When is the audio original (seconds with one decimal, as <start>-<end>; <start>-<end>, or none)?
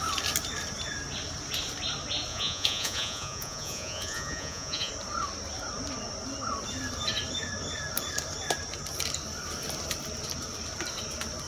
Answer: 0.0-2.3; 4.9-11.5